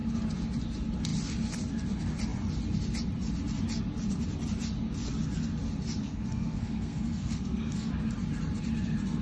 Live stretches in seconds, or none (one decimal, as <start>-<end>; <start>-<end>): 0.0-6.0; 7.9-9.2